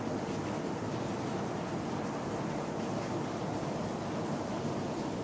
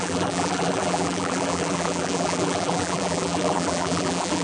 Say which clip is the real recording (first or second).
first